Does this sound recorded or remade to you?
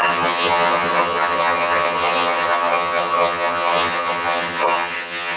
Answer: remade